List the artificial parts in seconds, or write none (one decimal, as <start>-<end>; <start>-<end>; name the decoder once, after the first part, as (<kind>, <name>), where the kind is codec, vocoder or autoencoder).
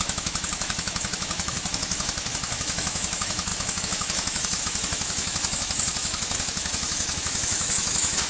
0.0-8.3 (autoencoder, DAC-VAE)